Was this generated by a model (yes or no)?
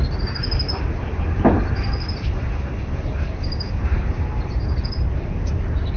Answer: no